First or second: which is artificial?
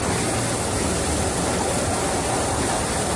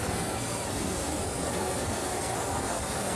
second